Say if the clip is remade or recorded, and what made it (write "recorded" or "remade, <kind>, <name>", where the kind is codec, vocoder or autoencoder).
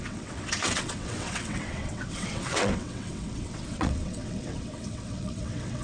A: remade, vocoder, WaveNeXt